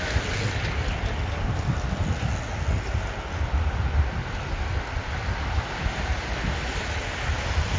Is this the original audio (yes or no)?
yes